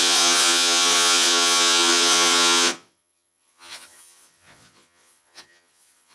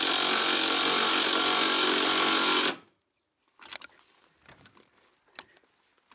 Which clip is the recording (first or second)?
second